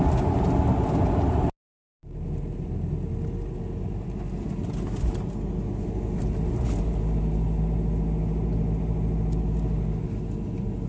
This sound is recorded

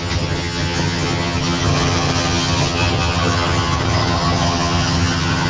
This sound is remade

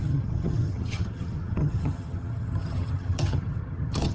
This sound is remade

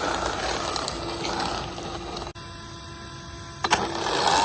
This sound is recorded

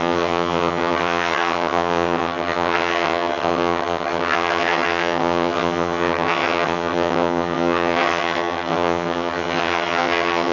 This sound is remade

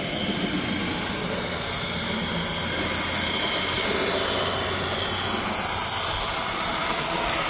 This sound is recorded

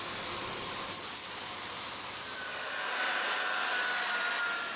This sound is recorded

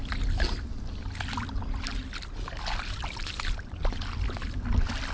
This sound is recorded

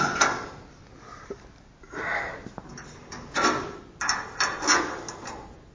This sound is recorded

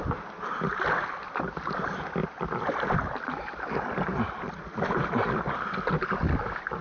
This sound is recorded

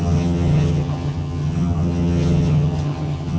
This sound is remade